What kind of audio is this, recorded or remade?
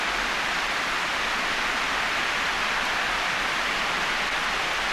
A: recorded